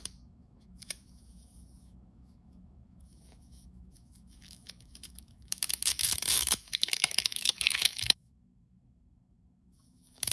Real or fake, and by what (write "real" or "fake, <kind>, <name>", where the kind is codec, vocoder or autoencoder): fake, autoencoder, DAC-VAE